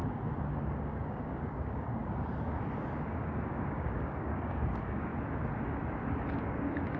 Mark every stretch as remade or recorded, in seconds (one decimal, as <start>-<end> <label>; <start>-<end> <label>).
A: 0.0-0.6 recorded; 0.6-2.0 remade; 2.0-3.7 recorded; 3.7-5.1 remade; 5.1-6.4 recorded; 6.4-7.0 remade